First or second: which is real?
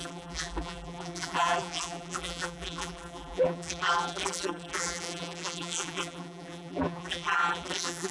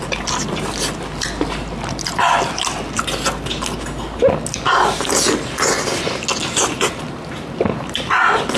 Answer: second